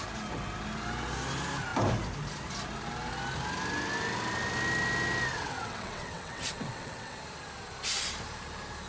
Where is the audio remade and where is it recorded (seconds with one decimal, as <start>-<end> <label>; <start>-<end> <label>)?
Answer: 0.0-5.3 recorded; 5.3-7.2 remade; 7.2-8.9 recorded